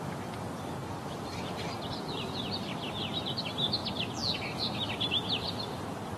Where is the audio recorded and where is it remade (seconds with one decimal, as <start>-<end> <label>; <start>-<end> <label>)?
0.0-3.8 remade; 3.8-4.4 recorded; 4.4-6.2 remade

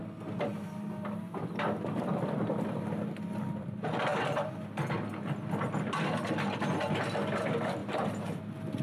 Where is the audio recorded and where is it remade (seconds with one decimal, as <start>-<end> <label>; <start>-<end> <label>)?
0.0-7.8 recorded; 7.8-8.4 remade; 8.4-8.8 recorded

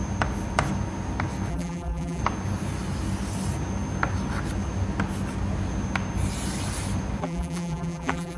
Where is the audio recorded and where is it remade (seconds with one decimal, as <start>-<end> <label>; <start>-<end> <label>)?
0.0-1.5 recorded; 1.5-2.2 remade; 2.2-7.2 recorded; 7.2-8.4 remade

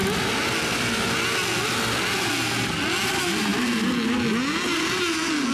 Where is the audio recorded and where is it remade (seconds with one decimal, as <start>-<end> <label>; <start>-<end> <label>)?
0.0-5.5 recorded